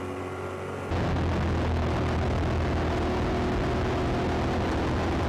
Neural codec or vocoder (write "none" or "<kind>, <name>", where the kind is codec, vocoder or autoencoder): none